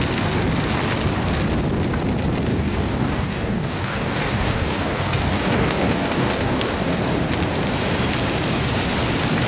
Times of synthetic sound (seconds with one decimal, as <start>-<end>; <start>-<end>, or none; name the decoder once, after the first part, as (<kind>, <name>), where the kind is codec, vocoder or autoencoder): 2.5-7.0 (codec, DAC)